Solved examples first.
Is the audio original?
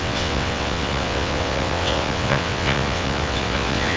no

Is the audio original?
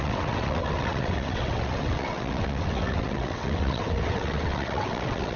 no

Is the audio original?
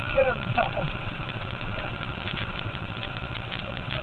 no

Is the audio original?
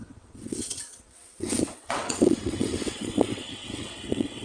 no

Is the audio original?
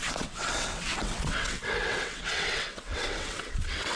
no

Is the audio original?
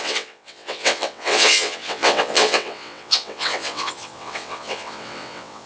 no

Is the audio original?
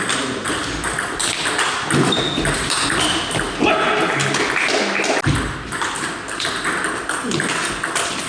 yes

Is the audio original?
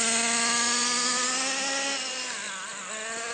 yes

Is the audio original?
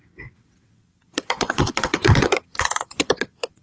no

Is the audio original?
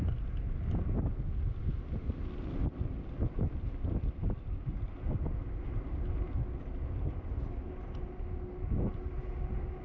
yes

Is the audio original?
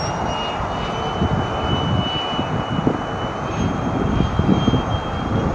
yes